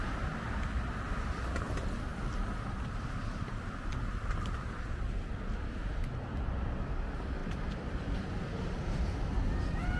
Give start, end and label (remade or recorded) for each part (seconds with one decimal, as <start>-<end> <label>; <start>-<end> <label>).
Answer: 0.0-2.1 recorded; 2.1-5.7 remade; 5.7-7.4 recorded; 7.4-9.6 remade; 9.6-10.0 recorded